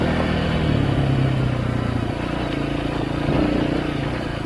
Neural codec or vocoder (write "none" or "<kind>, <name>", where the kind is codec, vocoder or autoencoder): none